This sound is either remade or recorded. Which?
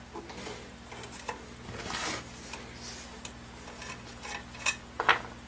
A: recorded